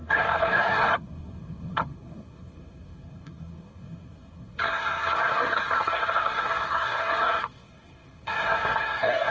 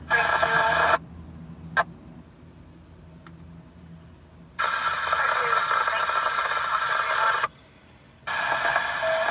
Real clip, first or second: second